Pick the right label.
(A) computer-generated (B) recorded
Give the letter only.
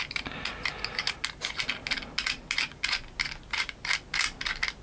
B